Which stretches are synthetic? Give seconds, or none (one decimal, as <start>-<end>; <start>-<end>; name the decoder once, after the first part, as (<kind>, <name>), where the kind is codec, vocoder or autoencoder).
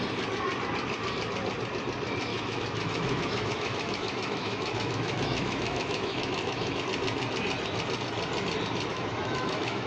2.3-6.8 (autoencoder, DAC-VAE); 8.9-9.9